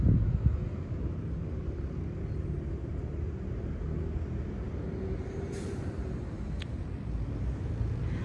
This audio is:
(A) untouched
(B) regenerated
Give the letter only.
A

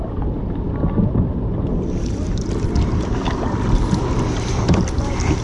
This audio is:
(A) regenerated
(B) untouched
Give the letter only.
B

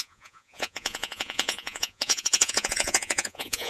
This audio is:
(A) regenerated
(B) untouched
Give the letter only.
A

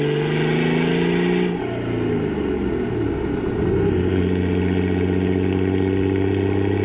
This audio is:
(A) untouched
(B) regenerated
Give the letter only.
A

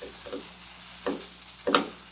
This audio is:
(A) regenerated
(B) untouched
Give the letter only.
B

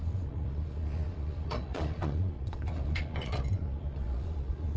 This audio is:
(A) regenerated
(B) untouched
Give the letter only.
A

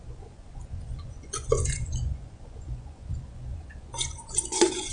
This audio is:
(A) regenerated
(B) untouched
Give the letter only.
A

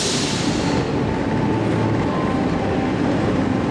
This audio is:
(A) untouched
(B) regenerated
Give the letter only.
A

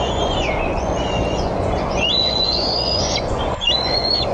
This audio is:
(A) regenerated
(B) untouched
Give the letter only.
A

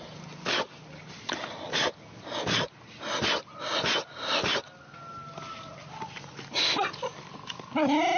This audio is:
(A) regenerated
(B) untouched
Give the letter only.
B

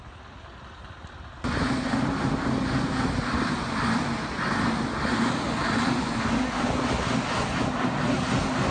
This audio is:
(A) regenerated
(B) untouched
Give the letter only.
B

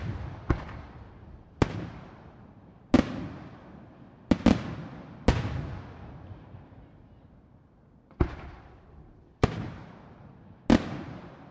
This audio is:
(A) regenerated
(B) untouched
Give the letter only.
B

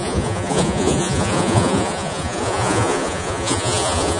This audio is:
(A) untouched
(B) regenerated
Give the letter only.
B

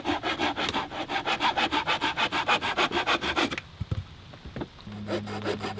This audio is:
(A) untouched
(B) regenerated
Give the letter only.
A